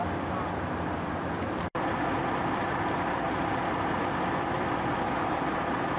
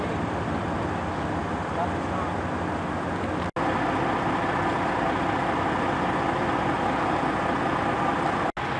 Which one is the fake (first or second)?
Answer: first